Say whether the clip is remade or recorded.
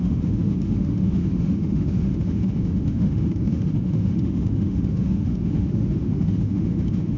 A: remade